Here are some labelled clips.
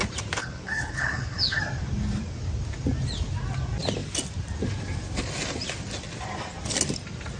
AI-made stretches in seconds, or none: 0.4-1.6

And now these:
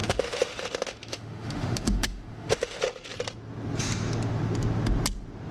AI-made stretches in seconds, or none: 0.0-2.8

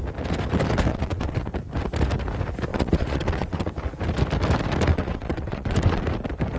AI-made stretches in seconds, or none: 0.9-1.5; 2.7-3.7; 4.9-6.0

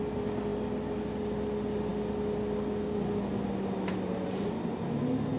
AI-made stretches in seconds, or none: none

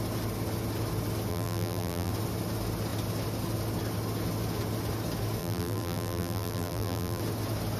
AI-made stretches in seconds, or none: 1.3-2.1; 5.4-7.2

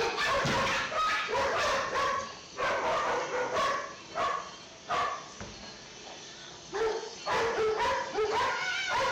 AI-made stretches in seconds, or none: 6.4-7.2

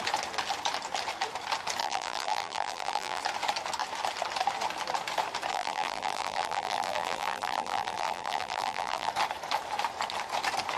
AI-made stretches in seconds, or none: 1.8-3.2; 5.5-9.1